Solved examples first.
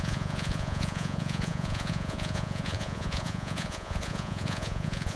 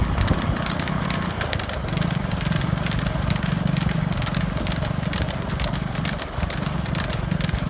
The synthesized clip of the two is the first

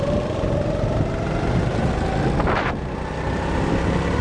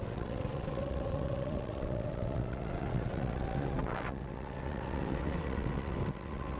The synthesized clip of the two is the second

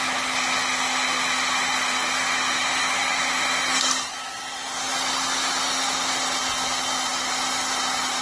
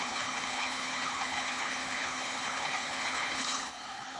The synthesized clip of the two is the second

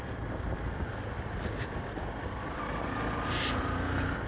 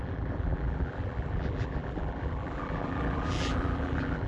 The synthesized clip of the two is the second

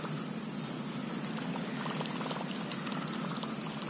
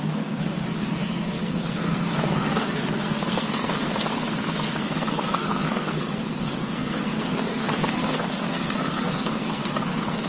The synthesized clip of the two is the second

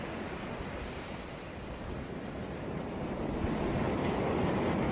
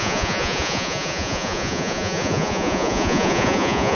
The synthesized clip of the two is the second